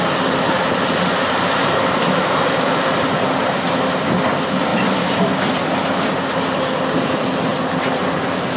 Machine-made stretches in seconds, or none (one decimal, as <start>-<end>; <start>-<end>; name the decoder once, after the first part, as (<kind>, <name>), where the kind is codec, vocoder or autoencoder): 1.2-2.9 (vocoder, BigVGAN v2); 4.7-6.1